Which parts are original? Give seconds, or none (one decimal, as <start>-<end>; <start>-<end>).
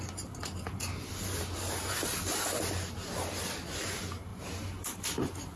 0.0-0.9; 1.4-4.3